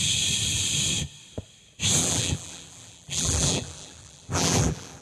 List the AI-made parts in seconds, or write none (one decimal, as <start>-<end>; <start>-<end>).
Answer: 2.0-5.0